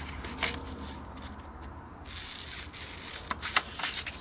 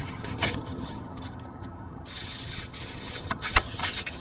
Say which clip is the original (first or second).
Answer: first